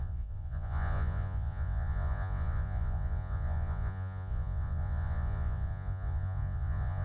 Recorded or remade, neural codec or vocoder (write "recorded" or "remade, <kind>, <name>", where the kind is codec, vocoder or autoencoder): remade, vocoder, Vocos